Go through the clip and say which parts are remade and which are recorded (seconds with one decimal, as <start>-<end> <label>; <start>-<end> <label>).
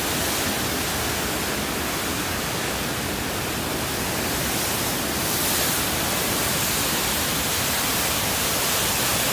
0.0-2.1 recorded; 2.1-2.8 remade; 2.8-9.3 recorded